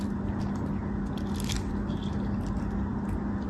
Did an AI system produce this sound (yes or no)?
no